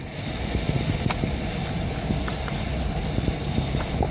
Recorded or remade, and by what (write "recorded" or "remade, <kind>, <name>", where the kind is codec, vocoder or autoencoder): recorded